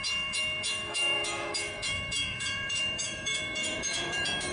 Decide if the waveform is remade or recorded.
remade